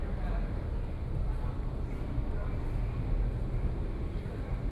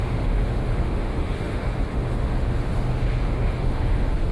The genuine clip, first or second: first